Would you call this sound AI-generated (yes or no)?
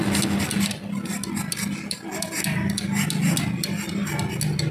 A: no